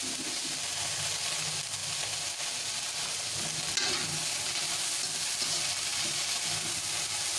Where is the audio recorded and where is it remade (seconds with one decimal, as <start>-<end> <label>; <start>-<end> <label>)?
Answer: 0.0-1.8 remade; 1.8-2.5 recorded; 2.5-4.2 remade; 4.2-5.2 recorded; 5.2-7.4 remade